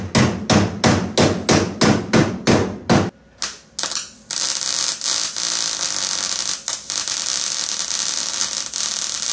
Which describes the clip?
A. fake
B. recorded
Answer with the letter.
B